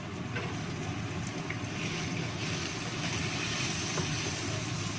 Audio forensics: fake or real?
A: real